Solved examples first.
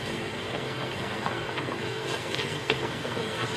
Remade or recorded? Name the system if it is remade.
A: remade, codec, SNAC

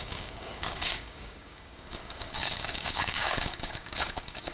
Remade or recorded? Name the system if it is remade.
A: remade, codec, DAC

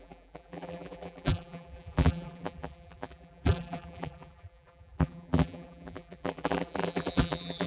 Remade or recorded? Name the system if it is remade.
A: remade, vocoder, BigVGAN v2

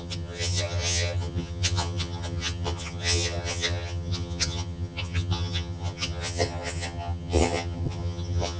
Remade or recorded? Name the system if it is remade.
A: remade, vocoder, HiFi-GAN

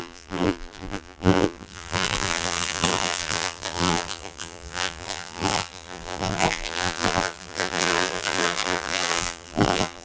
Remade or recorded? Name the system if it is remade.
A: remade, vocoder, BigVGAN v2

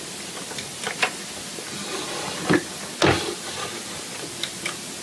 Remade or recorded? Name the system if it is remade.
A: recorded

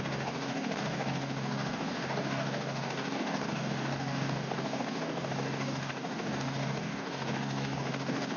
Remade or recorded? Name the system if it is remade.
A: remade, codec, DAC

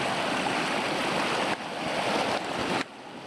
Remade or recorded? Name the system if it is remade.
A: recorded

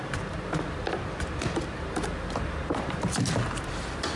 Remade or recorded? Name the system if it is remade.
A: remade, vocoder, BigVGAN v2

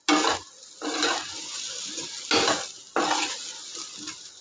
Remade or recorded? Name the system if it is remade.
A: recorded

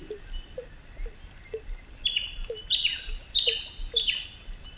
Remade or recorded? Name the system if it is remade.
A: recorded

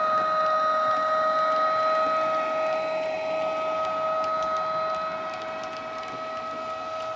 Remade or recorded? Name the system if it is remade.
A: recorded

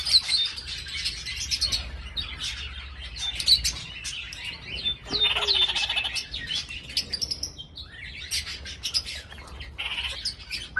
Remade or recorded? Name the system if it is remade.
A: recorded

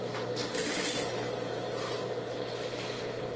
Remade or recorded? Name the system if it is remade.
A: recorded